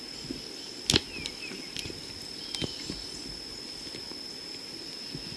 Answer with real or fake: real